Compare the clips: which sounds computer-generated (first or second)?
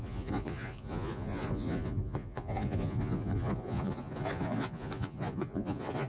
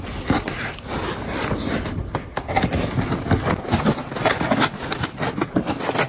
first